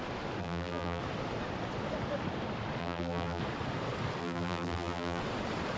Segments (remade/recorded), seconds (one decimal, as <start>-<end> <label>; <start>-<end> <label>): 0.0-0.4 recorded; 0.4-1.0 remade; 1.0-2.8 recorded; 2.8-3.4 remade; 3.4-4.2 recorded; 4.2-5.2 remade; 5.2-5.8 recorded